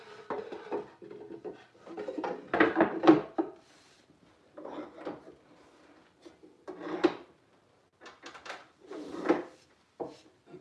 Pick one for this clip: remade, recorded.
recorded